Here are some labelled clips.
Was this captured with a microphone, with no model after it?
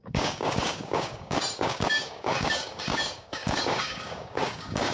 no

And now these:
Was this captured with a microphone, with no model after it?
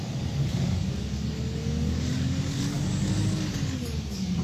no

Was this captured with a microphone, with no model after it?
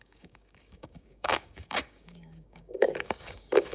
no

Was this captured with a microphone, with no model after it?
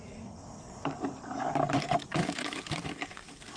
no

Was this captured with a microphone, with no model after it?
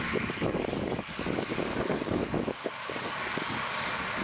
no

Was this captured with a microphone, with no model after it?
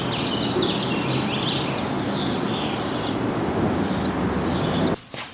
yes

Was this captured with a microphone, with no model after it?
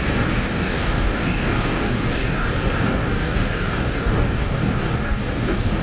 no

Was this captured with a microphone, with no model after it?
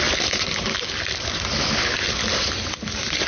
yes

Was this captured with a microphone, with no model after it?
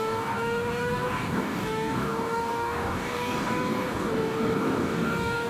no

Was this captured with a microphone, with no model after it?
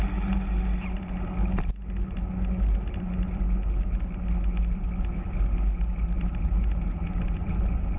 yes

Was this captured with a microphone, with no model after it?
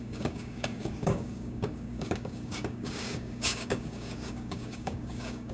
no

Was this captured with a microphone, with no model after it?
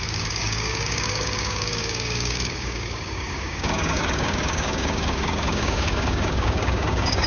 no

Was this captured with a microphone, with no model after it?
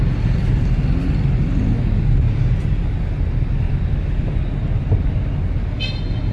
yes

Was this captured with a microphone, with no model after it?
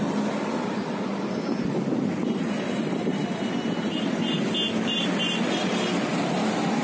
yes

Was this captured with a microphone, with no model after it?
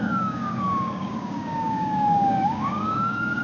no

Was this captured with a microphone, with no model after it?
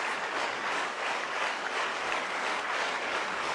no